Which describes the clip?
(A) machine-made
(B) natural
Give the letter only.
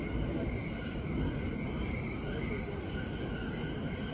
B